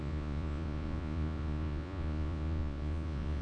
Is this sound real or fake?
fake